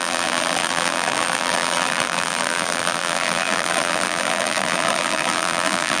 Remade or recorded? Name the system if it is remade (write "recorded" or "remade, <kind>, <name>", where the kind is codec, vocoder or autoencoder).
remade, vocoder, BigVGAN v2